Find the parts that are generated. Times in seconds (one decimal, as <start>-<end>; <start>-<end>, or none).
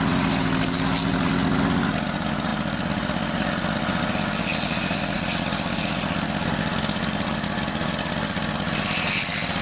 none